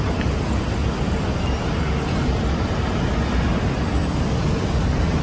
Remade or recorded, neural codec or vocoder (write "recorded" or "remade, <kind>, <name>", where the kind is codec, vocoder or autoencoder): recorded